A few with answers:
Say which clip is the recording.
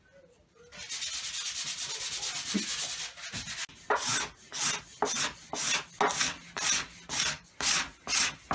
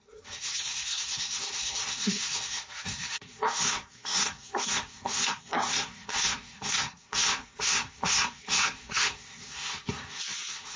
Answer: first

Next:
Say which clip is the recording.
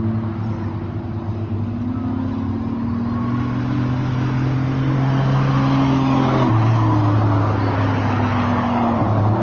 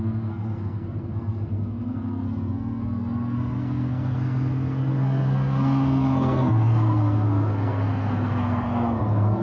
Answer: first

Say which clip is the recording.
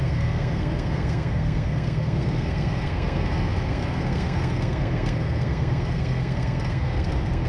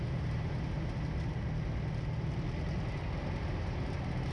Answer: second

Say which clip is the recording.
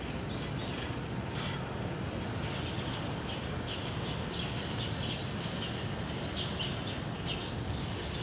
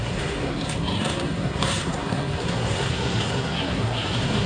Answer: first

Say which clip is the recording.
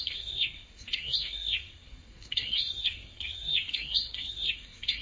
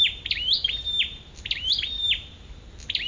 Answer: second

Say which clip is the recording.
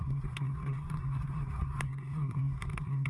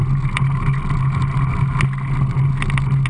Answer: second